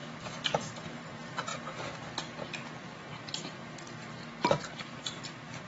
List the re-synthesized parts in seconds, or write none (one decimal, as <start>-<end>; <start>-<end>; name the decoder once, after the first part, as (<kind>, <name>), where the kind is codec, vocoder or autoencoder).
0.7-1.5 (vocoder, BigVGAN v2); 2.8-3.6; 4.4-5.7